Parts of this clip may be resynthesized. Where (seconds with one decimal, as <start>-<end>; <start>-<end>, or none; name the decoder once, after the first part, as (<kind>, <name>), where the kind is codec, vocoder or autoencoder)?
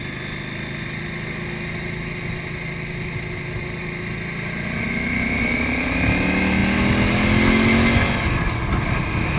none